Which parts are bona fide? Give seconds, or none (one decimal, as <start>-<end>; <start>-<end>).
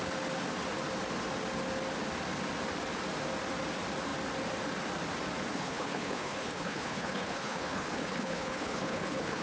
0.0-5.5